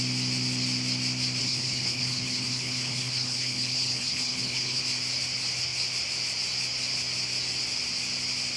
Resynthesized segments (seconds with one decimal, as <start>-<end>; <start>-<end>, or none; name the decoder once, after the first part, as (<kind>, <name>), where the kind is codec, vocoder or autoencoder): 1.4-4.8 (codec, HILCodec)

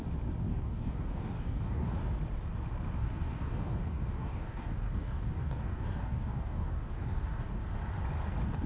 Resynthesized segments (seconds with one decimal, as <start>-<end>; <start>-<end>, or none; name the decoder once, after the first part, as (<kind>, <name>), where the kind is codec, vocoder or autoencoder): 0.5-1.9 (codec, DAC); 3.0-7.6

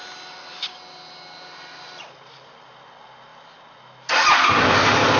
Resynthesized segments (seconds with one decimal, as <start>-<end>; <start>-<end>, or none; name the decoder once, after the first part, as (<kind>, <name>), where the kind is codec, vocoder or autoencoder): none

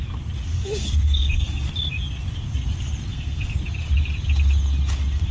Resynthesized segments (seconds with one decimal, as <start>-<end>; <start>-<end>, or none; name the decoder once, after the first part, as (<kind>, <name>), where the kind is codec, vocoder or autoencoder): 0.5-1.7 (codec, SNAC); 3.1-3.6

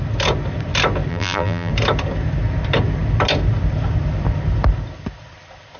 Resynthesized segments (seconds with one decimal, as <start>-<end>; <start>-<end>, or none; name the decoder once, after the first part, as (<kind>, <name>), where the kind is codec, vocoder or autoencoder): 1.1-1.7 (vocoder, BigVGAN v2)

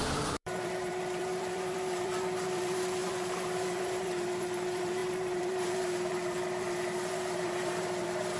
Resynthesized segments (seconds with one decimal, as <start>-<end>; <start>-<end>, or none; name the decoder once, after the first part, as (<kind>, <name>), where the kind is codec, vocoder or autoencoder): 0.0-8.4 (vocoder, BigVGAN v2)